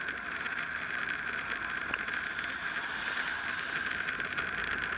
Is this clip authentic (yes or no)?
yes